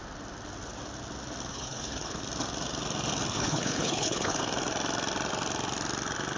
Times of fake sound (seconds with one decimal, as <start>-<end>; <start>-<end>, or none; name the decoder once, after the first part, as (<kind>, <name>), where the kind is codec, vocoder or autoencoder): 1.5-2.2 (codec, HILCodec); 3.3-4.4